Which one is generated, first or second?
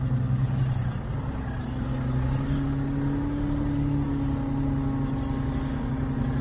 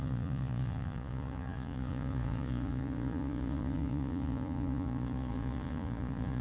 second